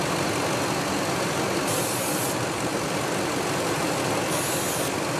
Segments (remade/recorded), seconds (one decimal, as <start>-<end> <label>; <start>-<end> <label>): 0.0-5.2 recorded